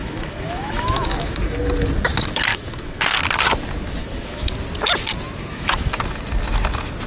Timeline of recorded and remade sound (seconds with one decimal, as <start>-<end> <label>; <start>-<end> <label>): 0.0-1.6 remade; 1.6-2.5 recorded; 2.5-3.0 remade; 3.0-4.0 recorded; 4.0-4.5 remade; 4.5-5.5 recorded; 5.5-6.0 remade; 6.0-7.1 recorded